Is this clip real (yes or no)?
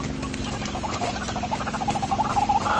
no